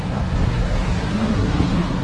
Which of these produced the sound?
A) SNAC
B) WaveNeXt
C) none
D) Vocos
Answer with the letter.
A